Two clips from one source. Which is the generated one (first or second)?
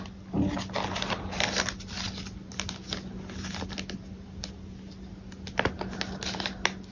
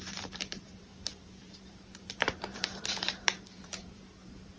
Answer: second